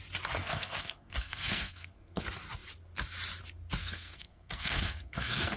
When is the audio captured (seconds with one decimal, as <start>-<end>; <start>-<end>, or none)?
0.0-0.4; 2.2-3.8